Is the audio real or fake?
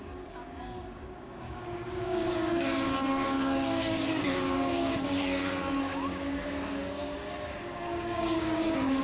fake